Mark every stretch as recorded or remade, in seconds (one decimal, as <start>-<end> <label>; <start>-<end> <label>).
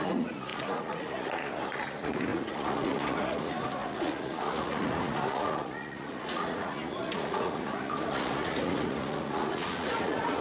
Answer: 0.0-10.4 remade